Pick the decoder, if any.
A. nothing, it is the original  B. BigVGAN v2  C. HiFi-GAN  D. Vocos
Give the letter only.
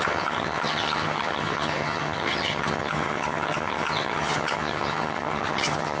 C